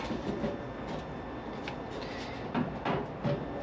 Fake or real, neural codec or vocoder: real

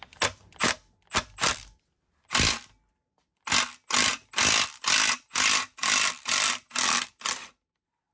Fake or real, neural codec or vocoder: real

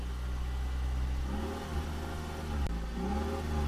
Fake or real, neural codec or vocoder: real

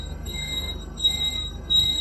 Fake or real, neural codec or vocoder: fake, codec, SNAC